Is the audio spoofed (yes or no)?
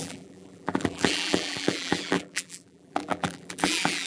yes